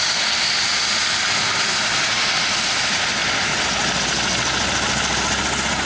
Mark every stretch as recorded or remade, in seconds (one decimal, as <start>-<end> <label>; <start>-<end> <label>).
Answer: 0.0-5.9 recorded